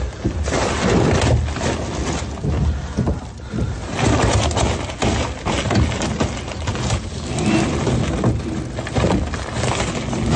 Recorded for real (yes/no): yes